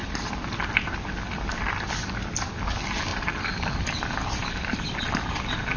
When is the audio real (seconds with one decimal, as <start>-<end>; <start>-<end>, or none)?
0.0-3.1; 5.0-5.8